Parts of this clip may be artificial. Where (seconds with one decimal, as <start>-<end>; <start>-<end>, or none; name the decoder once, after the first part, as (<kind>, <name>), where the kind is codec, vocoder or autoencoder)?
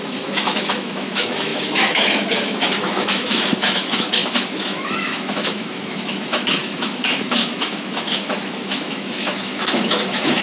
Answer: 0.0-10.4 (autoencoder, DAC-VAE)